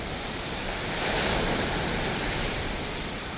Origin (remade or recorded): remade